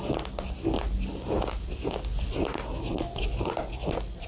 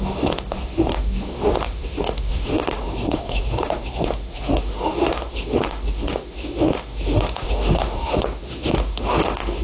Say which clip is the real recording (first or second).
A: first